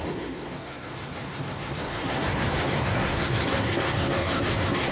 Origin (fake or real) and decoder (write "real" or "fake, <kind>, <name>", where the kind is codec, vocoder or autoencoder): fake, codec, SNAC